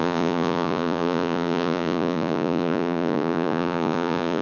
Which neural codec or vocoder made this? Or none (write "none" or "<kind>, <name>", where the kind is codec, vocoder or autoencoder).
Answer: vocoder, Vocos